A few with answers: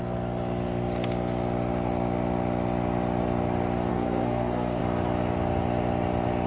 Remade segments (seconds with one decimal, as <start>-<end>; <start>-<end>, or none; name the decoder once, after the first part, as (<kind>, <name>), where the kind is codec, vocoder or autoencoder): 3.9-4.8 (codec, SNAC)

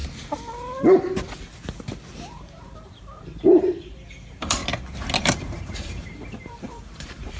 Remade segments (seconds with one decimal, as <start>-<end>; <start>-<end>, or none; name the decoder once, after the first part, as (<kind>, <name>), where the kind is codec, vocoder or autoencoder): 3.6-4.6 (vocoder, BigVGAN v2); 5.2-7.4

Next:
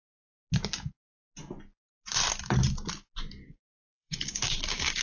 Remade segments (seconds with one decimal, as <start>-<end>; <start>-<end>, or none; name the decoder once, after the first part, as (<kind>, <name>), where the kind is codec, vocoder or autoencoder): 3.4-5.0 (codec, DAC)

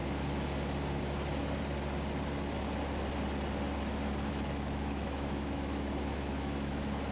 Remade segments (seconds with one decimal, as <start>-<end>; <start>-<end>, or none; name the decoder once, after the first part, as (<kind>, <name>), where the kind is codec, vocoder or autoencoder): 4.3-7.1 (autoencoder, DAC-VAE)